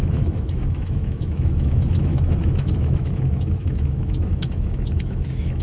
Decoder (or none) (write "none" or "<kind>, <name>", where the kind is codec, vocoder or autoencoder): autoencoder, DAC-VAE